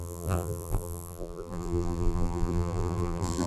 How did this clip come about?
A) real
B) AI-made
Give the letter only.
B